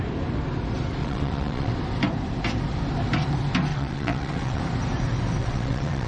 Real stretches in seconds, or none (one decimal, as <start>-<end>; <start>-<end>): 0.0-1.0; 1.7-3.7; 4.6-5.4

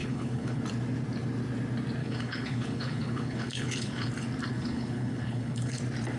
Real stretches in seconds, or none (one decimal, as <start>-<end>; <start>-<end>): 0.6-2.0; 4.1-4.5; 5.8-6.2

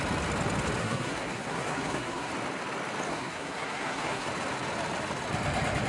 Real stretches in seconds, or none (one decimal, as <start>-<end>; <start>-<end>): 0.0-0.8; 2.3-3.1; 4.3-5.9

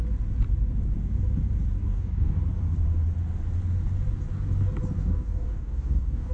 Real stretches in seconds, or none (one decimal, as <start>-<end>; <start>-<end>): 0.0-1.8; 2.4-5.0

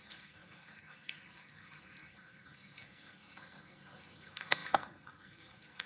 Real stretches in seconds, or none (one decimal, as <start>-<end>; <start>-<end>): none